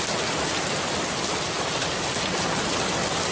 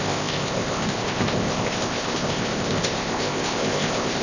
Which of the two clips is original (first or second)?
first